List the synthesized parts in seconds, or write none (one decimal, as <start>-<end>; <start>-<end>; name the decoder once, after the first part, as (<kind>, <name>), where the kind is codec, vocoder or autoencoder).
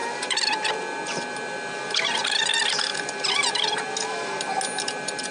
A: none